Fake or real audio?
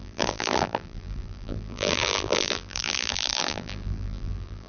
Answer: fake